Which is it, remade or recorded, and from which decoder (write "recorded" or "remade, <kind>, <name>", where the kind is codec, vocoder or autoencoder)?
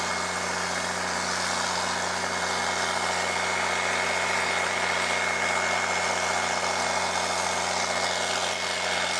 recorded